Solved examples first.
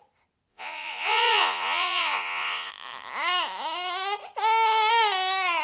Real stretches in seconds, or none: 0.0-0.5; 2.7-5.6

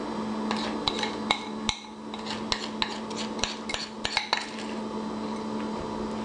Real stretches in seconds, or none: 0.0-6.2

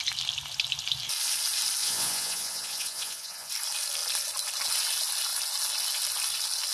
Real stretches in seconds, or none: 0.0-1.8; 3.5-6.7

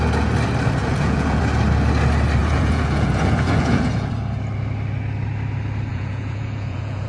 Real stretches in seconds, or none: 0.0-0.8; 1.4-2.4; 4.1-5.9

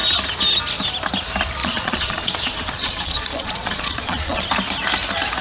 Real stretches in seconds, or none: 0.0-1.6; 4.5-5.4

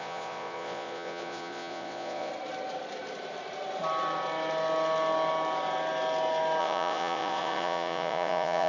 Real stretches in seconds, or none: 2.3-6.6

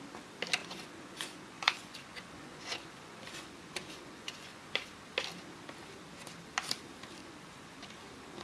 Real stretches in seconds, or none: 0.0-0.6; 4.9-7.2; 7.8-8.4

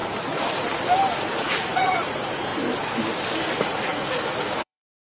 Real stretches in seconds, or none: 0.0-1.2; 2.5-3.4